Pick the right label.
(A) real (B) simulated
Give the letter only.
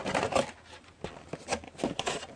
A